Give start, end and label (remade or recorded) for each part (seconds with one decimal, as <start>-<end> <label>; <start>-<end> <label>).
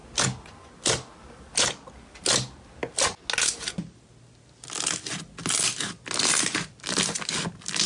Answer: 0.0-7.9 recorded